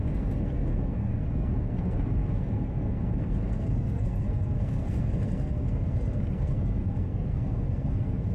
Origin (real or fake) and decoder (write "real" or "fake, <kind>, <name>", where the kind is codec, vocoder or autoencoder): fake, codec, SNAC